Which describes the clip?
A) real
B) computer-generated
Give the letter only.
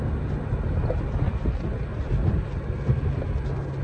A